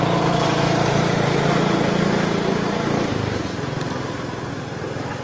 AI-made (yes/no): no